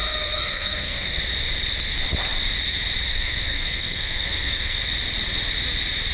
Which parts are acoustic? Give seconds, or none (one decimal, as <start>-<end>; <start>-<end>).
1.2-3.1; 4.8-6.1